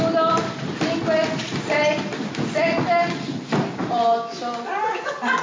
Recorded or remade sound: recorded